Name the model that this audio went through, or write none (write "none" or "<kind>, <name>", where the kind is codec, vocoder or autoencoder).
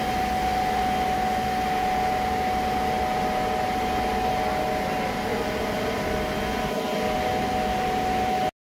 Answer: none